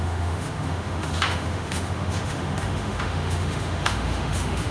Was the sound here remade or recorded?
remade